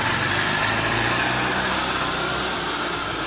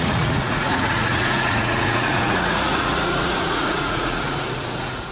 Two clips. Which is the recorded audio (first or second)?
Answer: first